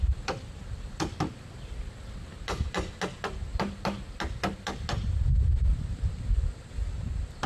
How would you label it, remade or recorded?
recorded